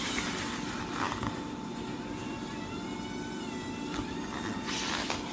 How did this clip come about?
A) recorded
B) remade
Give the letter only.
A